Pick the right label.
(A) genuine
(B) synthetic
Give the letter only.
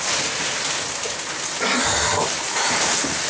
A